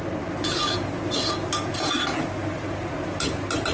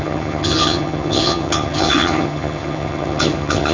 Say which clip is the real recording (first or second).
first